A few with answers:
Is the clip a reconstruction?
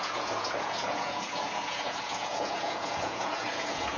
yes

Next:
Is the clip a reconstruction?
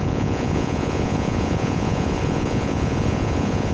yes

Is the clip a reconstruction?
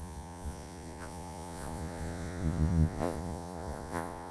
yes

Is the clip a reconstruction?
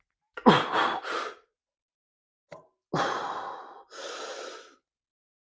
no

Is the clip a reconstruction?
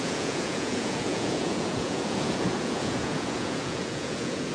yes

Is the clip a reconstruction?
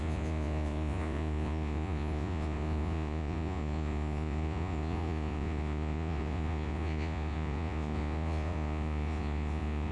yes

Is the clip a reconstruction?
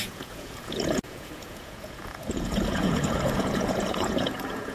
yes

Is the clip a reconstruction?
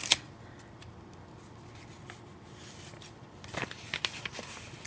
no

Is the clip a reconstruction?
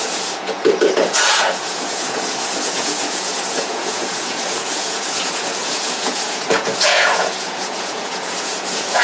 yes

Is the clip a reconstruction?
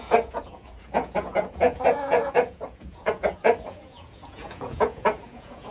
yes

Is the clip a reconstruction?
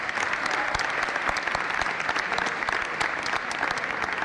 no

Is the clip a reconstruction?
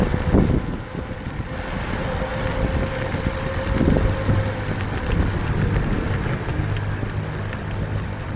no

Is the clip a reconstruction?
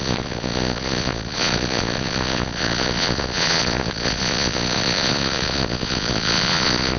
yes